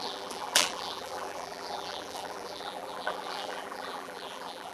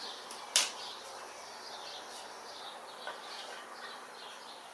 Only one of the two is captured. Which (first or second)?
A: second